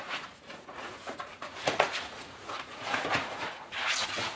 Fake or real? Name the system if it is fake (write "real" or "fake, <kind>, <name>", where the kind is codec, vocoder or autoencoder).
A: fake, vocoder, Vocos